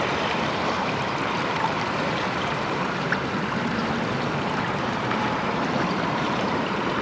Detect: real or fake fake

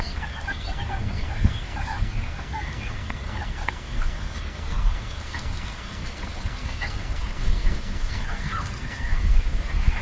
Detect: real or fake fake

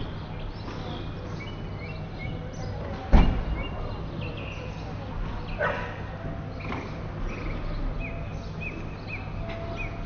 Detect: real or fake real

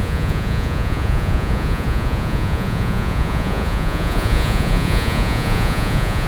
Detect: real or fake fake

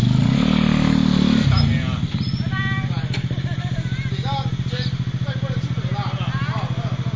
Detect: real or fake real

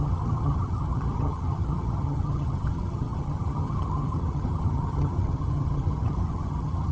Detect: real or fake fake